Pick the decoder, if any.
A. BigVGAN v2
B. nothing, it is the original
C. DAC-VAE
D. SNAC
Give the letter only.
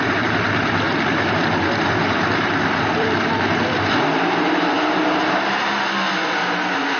A